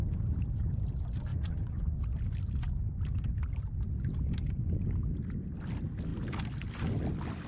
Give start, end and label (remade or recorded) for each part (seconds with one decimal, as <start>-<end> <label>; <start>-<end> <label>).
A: 0.0-1.3 recorded; 1.3-2.0 remade; 2.0-7.5 recorded